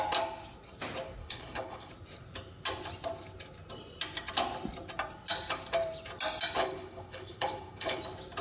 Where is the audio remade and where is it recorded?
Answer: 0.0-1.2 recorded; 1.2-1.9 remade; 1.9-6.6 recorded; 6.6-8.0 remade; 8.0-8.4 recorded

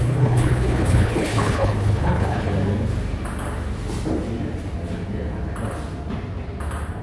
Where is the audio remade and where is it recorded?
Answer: 0.0-2.5 remade; 2.5-7.0 recorded

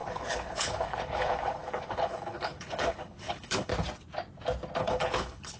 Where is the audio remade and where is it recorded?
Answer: 0.0-3.7 remade; 3.7-4.8 recorded; 4.8-5.6 remade

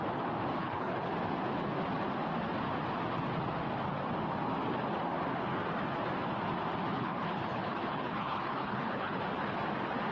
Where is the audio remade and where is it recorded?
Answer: 0.0-0.6 recorded; 0.6-1.1 remade; 1.1-6.9 recorded; 6.9-9.2 remade; 9.2-10.1 recorded

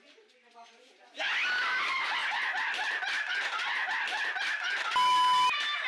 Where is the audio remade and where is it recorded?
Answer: 0.0-5.9 recorded